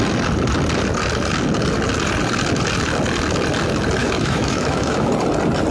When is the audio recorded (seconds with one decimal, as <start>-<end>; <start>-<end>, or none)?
0.0-4.0; 5.1-5.7